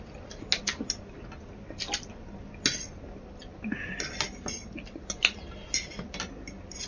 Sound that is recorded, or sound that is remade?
recorded